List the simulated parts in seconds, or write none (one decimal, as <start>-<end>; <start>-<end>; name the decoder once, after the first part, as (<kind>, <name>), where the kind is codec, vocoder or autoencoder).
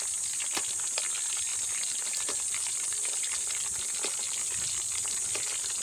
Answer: 1.5-5.0 (vocoder, BigVGAN v2)